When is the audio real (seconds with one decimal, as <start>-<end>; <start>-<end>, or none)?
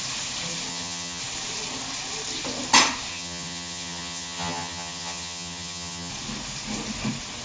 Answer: 0.0-0.7; 1.2-3.1; 6.1-7.4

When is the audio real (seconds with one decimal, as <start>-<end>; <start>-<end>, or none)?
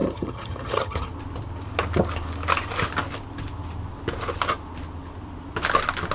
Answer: 1.1-6.1